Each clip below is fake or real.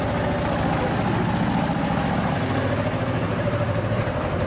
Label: real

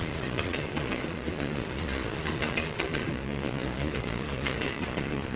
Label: fake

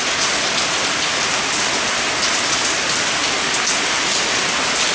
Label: real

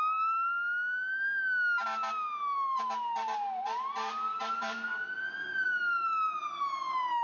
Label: real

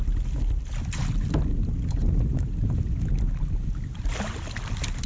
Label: real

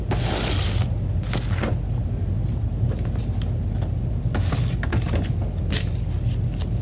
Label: real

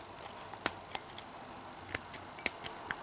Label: real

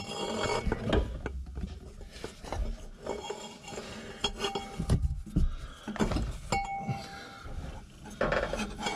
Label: real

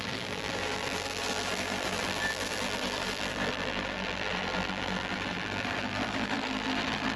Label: fake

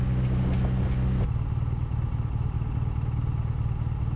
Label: real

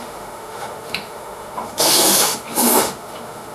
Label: fake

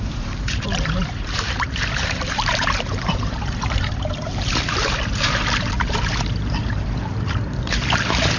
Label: fake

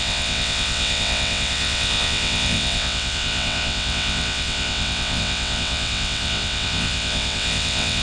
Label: fake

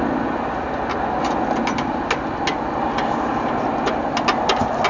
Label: real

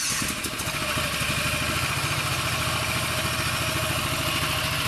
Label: real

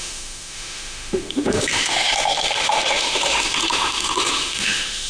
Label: fake